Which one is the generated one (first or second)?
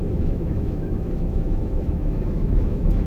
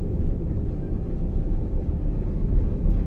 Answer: first